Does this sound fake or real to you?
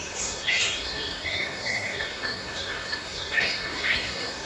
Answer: fake